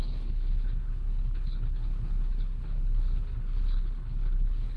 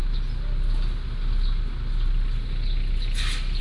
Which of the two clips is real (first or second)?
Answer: second